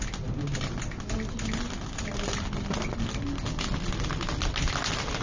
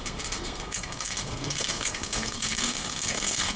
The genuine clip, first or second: first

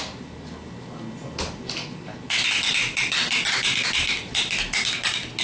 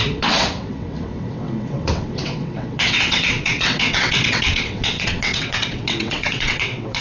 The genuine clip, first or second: first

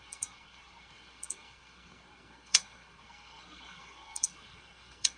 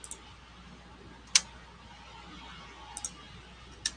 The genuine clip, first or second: second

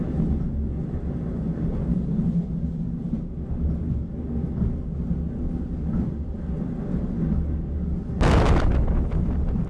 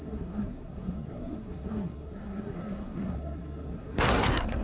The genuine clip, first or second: first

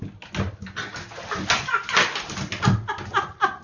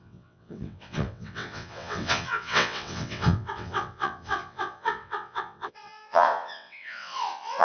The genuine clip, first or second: first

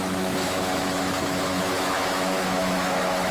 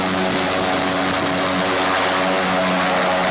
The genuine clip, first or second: second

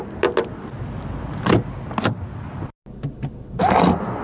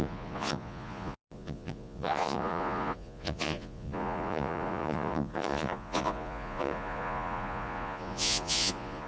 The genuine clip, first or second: first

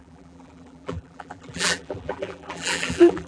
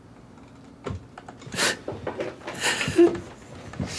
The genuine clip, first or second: second